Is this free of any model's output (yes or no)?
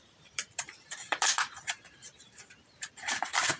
no